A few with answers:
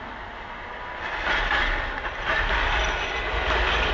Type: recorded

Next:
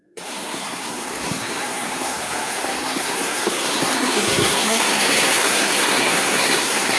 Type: remade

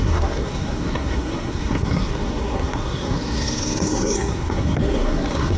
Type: remade